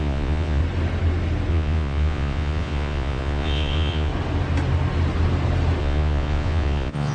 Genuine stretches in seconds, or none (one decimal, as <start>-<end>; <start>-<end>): 0.6-1.5; 4.1-5.8